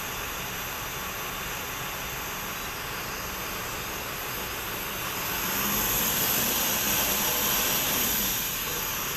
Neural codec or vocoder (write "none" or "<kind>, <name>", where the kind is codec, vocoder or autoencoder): none